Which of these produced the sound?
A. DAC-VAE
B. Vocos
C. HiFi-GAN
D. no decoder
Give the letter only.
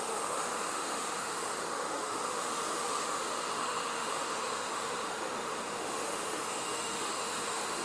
A